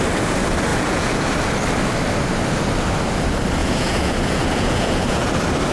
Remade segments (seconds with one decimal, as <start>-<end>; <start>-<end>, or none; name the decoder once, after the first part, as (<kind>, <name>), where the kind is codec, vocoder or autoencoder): 0.7-1.2 (vocoder, Vocos); 3.6-5.3